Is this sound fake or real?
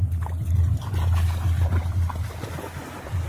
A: real